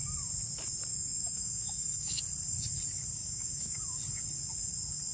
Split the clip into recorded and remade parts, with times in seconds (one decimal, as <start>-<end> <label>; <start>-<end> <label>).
0.0-0.9 recorded; 0.9-2.2 remade; 2.2-3.2 recorded; 3.2-3.8 remade; 3.8-5.1 recorded